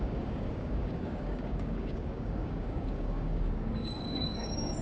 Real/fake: fake